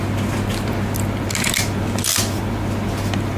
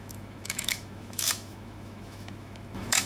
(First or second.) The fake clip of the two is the second